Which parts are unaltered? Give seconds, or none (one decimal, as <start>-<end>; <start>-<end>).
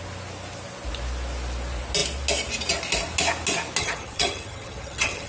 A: 0.0-3.8